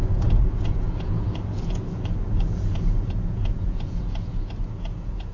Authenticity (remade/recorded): remade